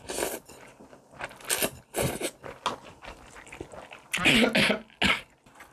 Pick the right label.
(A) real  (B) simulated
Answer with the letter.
A